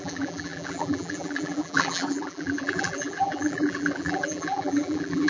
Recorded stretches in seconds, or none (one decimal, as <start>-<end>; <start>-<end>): none